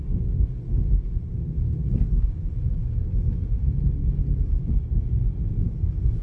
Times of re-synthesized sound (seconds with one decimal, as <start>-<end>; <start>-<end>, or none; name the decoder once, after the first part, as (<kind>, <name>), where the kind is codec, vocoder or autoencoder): none